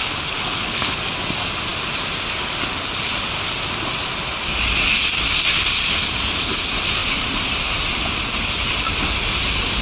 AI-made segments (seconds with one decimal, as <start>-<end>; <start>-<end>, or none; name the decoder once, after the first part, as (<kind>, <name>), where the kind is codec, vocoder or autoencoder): 0.0-1.0 (codec, HILCodec)